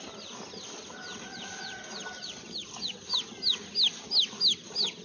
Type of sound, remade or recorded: recorded